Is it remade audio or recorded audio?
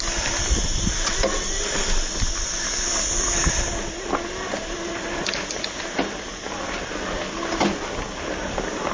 recorded